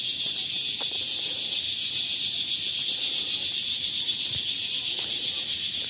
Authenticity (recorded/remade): remade